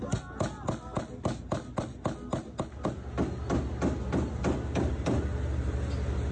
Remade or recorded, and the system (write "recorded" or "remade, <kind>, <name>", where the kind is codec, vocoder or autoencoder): recorded